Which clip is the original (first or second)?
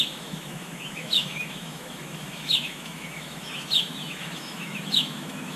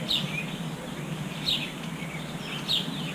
second